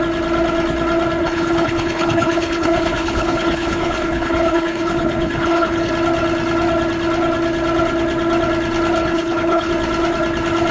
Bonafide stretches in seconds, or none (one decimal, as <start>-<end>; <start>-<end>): 0.0-1.2; 5.9-9.0; 9.7-10.7